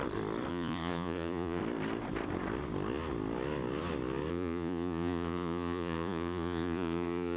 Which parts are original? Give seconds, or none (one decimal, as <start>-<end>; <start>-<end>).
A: 0.0-0.5; 1.6-4.3